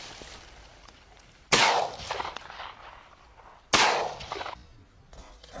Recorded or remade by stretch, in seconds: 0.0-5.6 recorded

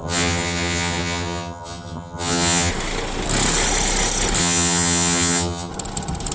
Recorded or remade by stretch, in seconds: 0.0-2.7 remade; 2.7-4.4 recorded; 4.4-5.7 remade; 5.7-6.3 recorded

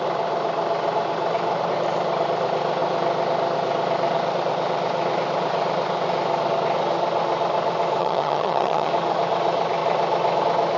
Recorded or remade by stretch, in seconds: 0.0-8.0 recorded; 8.0-8.9 remade; 8.9-10.8 recorded

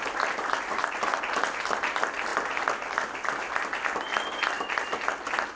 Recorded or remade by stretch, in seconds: 0.0-5.6 recorded